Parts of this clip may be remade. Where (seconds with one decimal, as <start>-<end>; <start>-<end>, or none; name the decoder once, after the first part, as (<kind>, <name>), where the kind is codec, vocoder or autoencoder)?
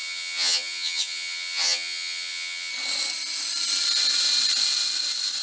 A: 0.0-2.7 (vocoder, HiFi-GAN)